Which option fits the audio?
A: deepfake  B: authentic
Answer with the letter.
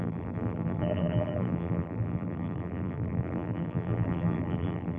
A